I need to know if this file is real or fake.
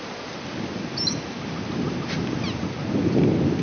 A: real